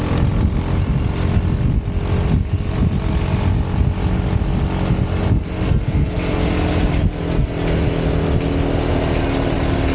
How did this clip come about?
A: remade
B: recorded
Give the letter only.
B